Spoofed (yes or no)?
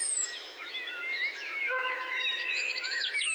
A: yes